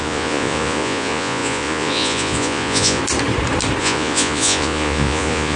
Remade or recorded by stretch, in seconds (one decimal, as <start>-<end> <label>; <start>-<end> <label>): 0.0-3.0 remade; 3.0-3.8 recorded; 3.8-5.6 remade